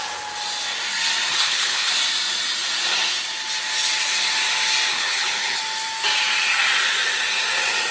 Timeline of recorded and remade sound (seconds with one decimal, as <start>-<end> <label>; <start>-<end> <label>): 0.0-1.3 recorded; 1.3-1.9 remade; 1.9-4.9 recorded; 4.9-5.6 remade; 5.6-7.9 recorded